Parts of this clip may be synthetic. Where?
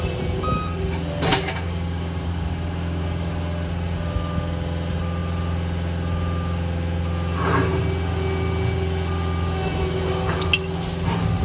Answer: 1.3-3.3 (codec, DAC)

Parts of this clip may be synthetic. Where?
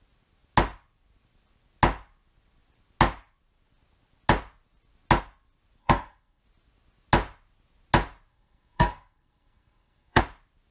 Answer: 5.8-6.4 (codec, SNAC); 8.3-10.2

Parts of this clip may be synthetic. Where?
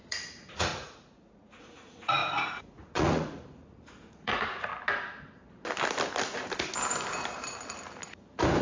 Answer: 0.0-4.7 (vocoder, Vocos)